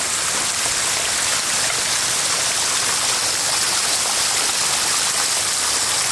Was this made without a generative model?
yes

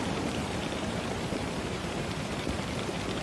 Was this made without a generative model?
no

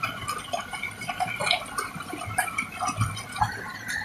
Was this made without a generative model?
yes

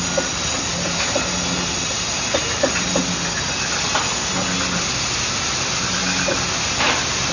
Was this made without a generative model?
yes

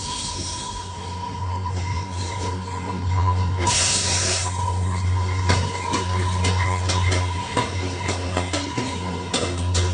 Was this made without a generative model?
no